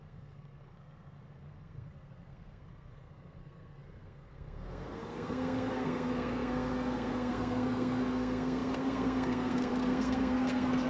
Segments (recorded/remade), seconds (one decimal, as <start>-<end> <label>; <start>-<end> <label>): 0.0-10.9 remade